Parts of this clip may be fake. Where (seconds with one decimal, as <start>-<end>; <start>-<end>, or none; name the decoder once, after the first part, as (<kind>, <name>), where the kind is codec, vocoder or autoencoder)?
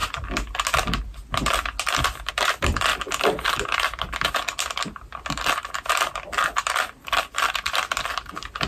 none